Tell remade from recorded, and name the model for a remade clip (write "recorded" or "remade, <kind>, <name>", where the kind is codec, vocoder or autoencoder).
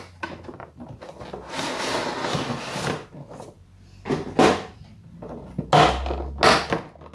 recorded